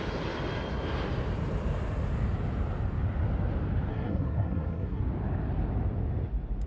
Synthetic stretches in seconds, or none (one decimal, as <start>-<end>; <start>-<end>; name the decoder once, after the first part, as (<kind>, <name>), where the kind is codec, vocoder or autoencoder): 3.9-5.0 (codec, SNAC)